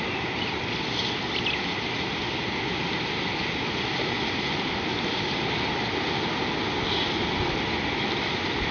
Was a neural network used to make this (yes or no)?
no